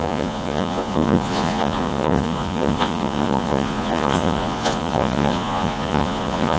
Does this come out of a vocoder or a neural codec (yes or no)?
yes